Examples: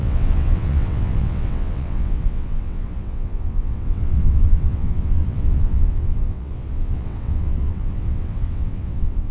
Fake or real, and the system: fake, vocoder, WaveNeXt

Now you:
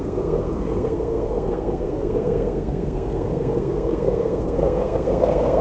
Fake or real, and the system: fake, codec, SNAC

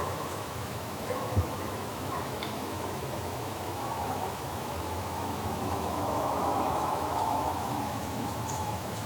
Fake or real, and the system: fake, autoencoder, DAC-VAE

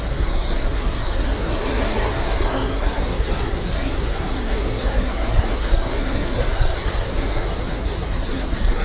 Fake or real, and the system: fake, codec, SNAC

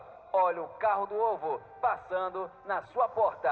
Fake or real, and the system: real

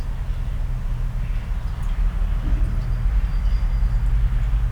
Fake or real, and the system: real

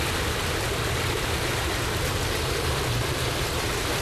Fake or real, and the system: real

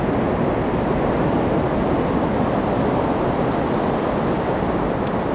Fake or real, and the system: real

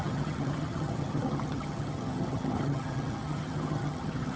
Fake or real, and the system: fake, vocoder, HiFi-GAN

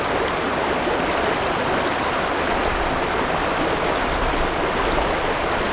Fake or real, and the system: real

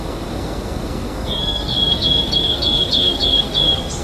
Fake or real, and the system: fake, codec, SNAC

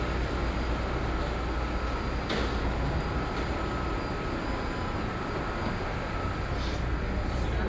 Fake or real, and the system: real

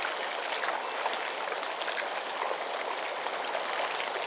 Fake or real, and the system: real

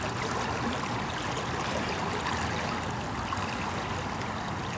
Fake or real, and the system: real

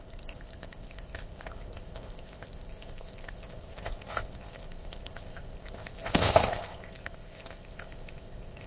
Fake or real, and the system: fake, codec, ZipCodec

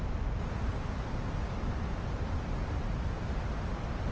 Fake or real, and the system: real